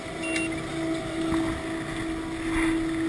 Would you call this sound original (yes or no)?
yes